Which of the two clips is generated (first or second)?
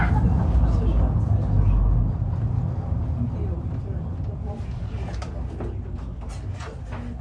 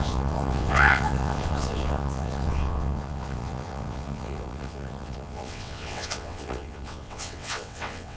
second